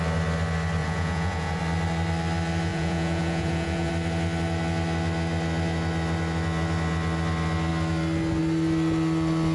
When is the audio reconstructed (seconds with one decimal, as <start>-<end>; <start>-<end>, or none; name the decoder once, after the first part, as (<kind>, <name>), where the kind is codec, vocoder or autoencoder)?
0.8-1.6 (vocoder, Vocos); 2.7-3.9